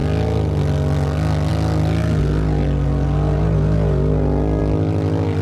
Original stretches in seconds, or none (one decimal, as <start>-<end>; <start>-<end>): 0.0-5.4